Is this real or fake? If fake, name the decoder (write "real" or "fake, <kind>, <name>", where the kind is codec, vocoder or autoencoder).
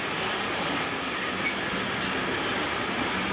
real